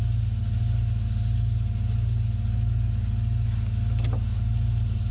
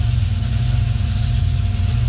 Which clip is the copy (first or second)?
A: second